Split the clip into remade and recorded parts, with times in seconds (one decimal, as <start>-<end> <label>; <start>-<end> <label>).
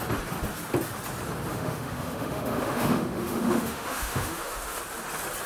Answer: 0.0-1.5 recorded; 1.5-4.8 remade; 4.8-5.5 recorded